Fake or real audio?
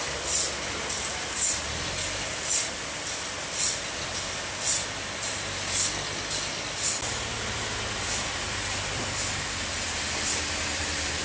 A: real